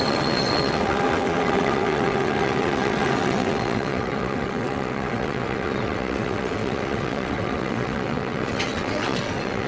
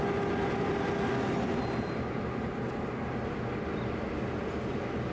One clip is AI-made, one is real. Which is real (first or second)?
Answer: second